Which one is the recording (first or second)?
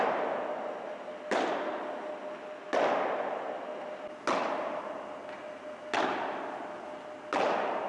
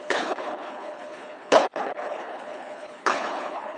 first